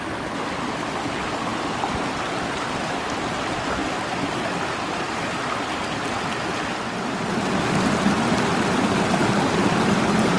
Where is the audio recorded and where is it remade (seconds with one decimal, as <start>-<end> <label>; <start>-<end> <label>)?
0.0-10.4 recorded